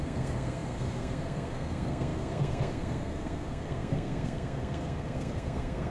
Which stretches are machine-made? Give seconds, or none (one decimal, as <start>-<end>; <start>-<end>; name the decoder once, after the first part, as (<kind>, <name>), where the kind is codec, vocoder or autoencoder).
0.0-5.9 (codec, SNAC)